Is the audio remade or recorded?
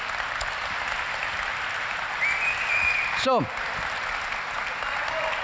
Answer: recorded